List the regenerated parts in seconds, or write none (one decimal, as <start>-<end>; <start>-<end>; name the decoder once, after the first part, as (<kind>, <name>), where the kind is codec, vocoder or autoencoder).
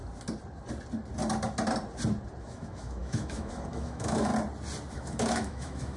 2.4-4.3 (autoencoder, DAC-VAE); 4.9-6.0